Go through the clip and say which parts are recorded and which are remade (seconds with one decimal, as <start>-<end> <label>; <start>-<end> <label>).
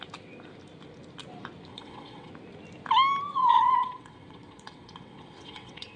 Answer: 0.0-1.7 recorded; 1.7-2.3 remade; 2.3-3.3 recorded; 3.3-6.0 remade